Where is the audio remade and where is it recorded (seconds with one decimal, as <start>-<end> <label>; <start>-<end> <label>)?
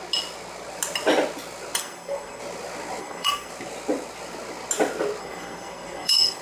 0.0-1.8 recorded; 1.8-2.4 remade; 2.4-3.0 recorded; 3.0-3.5 remade; 3.5-5.2 recorded; 5.2-6.4 remade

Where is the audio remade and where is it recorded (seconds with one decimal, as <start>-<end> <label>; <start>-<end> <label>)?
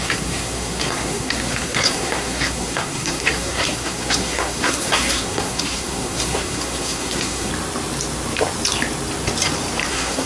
0.0-7.5 remade; 7.5-9.9 recorded; 9.9-10.3 remade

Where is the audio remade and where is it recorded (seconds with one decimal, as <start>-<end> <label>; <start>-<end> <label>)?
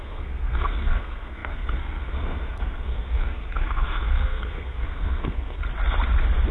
0.0-5.6 remade; 5.6-6.5 recorded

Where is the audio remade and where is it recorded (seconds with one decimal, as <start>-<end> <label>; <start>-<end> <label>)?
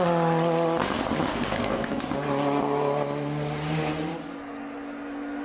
0.0-1.3 recorded; 1.3-2.0 remade; 2.0-5.4 recorded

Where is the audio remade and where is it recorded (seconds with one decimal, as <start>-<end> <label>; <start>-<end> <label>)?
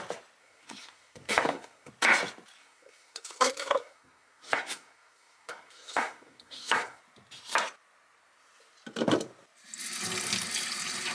0.0-0.4 recorded; 0.4-1.9 remade; 1.9-2.6 recorded; 2.6-7.0 remade; 7.0-11.1 recorded